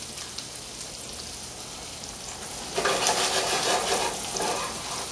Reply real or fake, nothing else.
real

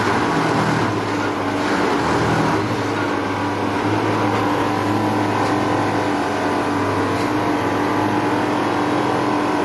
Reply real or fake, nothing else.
real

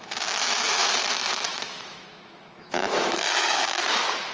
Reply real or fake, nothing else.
fake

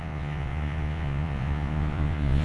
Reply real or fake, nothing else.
fake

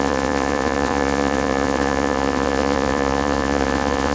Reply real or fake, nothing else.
fake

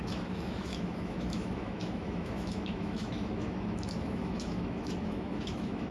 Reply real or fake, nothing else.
fake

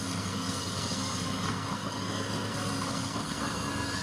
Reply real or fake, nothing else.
fake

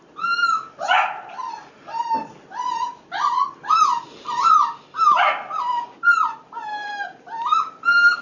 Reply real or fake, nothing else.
real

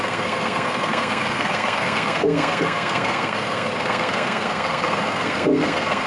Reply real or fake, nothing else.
fake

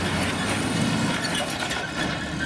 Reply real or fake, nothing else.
real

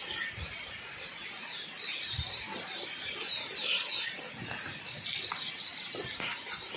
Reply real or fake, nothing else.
real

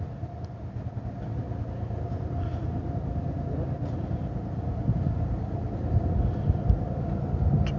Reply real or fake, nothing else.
real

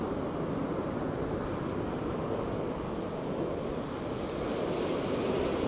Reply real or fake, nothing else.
real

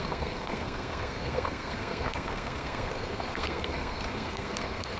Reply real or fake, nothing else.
fake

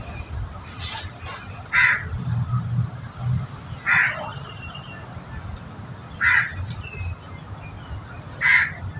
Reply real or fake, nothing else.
real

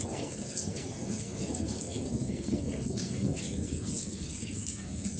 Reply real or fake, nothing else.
fake